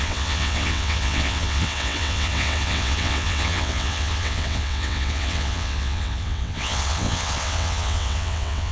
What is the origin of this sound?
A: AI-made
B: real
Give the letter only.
A